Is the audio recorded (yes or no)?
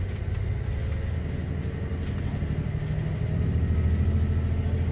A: yes